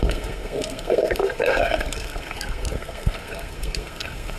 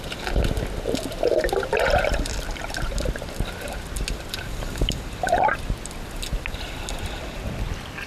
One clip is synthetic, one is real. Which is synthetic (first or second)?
first